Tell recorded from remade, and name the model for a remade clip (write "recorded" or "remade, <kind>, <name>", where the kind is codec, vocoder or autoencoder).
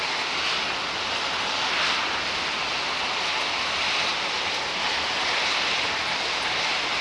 recorded